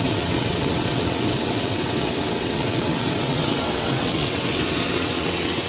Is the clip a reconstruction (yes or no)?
yes